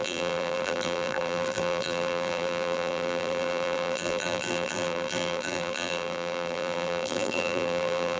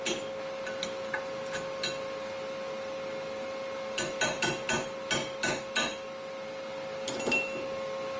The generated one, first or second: first